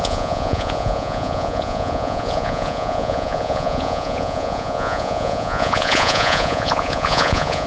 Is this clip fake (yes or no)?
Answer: yes